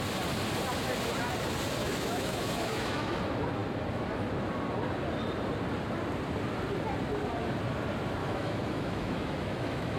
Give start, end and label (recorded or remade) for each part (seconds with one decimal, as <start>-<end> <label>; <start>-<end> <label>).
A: 0.0-1.8 recorded; 1.8-3.2 remade; 3.2-8.2 recorded; 8.2-10.0 remade

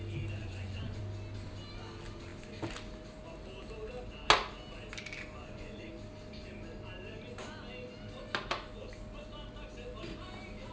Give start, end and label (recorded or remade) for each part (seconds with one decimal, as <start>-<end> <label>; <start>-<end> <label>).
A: 0.0-0.4 recorded; 0.4-1.0 remade; 1.0-5.4 recorded; 5.4-5.9 remade; 5.9-10.7 recorded

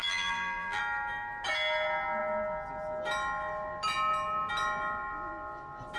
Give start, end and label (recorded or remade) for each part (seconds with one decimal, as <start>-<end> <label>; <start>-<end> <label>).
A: 0.0-0.8 remade; 0.8-6.0 recorded

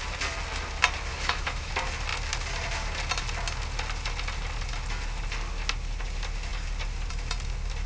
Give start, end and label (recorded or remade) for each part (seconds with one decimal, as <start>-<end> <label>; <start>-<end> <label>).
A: 0.0-1.1 recorded; 1.1-1.7 remade; 1.7-7.9 recorded

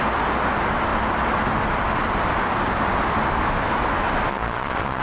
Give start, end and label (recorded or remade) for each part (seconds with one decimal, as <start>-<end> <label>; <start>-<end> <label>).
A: 0.0-4.3 recorded; 4.3-5.0 remade